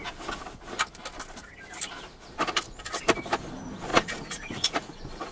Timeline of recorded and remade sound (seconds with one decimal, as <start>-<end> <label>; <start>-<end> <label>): 0.0-3.9 recorded; 3.9-5.3 remade